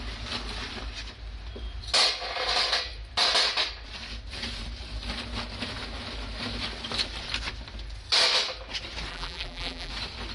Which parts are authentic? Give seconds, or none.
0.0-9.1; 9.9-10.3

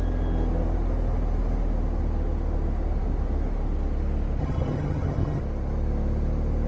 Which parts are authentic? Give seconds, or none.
0.0-4.4; 5.4-6.7

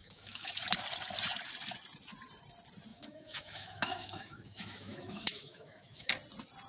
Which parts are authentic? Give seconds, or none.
0.6-2.9; 6.1-6.7

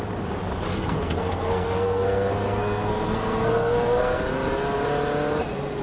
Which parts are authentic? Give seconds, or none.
0.0-0.7; 4.2-5.8

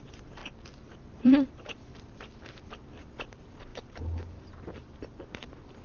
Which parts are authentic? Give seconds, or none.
0.4-1.2; 1.9-3.0

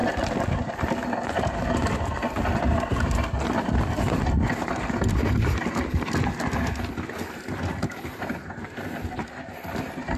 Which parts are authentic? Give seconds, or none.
0.0-10.2

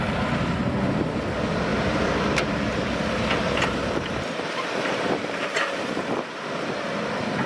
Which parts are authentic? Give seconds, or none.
0.0-1.7; 6.1-7.5